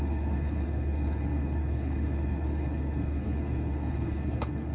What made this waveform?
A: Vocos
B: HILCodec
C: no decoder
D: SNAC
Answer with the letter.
B